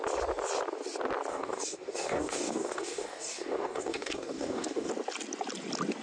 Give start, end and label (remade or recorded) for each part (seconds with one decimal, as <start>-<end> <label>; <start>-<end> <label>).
0.0-1.3 recorded; 1.3-4.9 remade; 4.9-6.0 recorded